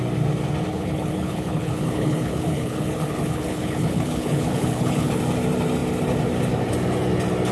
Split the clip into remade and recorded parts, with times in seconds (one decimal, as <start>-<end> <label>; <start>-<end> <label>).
0.0-0.7 recorded; 0.7-5.2 remade; 5.2-7.5 recorded